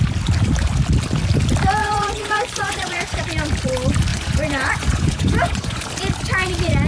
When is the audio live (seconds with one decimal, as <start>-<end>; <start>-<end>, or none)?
0.0-1.8; 3.2-4.1; 5.8-6.9